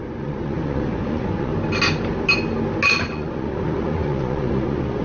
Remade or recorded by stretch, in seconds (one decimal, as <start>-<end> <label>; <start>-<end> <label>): 0.0-1.5 remade; 1.5-2.9 recorded; 2.9-5.0 remade